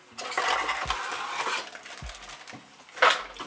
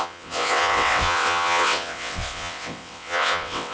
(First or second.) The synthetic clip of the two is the second